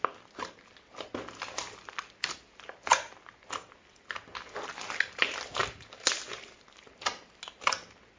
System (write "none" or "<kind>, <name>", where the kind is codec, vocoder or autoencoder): none